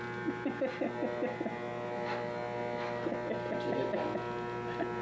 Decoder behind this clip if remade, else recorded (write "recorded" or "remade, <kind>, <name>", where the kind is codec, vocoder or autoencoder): recorded